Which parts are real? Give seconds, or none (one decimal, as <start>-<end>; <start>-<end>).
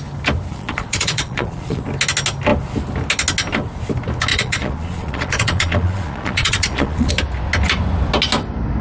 0.0-0.5; 1.8-4.3; 7.1-8.8